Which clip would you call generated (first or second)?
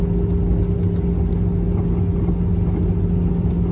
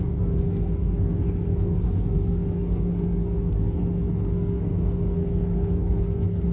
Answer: second